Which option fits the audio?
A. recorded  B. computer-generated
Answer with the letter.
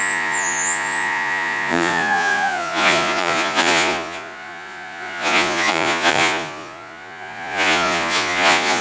B